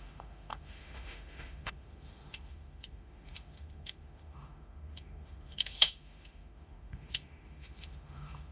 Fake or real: fake